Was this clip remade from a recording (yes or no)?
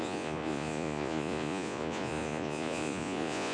yes